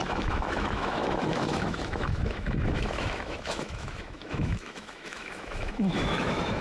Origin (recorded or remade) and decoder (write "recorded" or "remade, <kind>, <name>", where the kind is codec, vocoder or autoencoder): remade, autoencoder, DAC-VAE